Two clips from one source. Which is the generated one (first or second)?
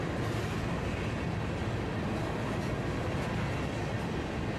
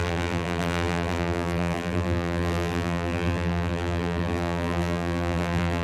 second